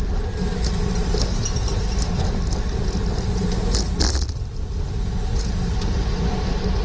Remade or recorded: recorded